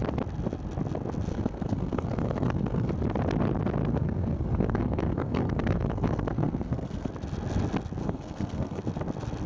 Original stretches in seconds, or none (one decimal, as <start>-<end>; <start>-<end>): 0.0-1.3; 2.9-3.9; 7.1-8.0; 8.8-9.5